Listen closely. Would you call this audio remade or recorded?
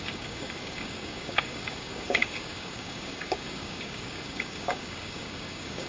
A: remade